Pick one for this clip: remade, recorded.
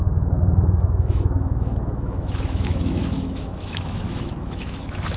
remade